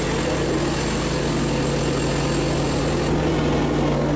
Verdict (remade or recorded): recorded